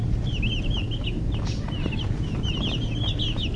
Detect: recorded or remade recorded